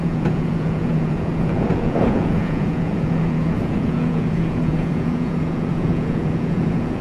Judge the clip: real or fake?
fake